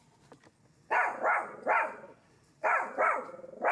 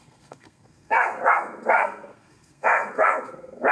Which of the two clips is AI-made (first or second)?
second